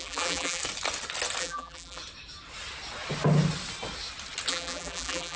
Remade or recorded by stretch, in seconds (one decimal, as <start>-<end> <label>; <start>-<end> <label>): 0.0-0.6 remade; 0.6-1.4 recorded; 1.4-2.0 remade; 2.0-4.5 recorded; 4.5-5.4 remade